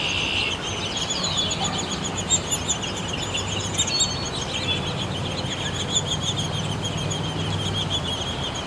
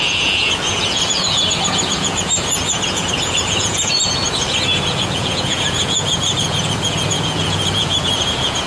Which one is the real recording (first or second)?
first